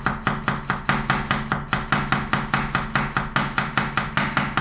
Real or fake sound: real